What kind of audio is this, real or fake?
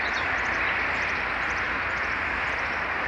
real